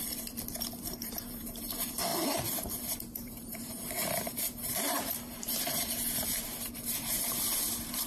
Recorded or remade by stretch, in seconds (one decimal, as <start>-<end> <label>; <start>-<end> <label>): 0.0-0.8 recorded; 0.8-8.1 remade

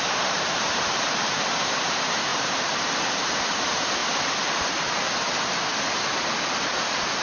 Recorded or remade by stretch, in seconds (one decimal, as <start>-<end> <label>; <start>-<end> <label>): 0.0-4.0 remade; 4.0-7.2 recorded

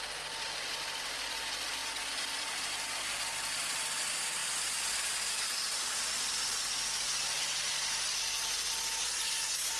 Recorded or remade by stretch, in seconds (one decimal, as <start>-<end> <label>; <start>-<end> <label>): 0.0-9.8 recorded